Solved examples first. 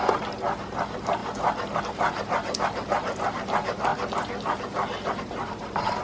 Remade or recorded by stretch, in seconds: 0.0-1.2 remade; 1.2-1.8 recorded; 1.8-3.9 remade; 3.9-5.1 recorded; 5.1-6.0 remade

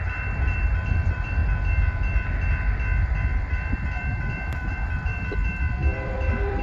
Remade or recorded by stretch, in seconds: 0.0-1.4 remade; 1.4-3.0 recorded; 3.0-6.6 remade